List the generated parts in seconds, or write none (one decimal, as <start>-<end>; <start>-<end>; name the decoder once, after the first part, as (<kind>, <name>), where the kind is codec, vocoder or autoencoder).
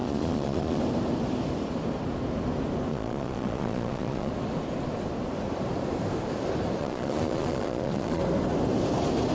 0.0-0.8 (vocoder, Vocos); 2.9-4.3; 6.8-8.2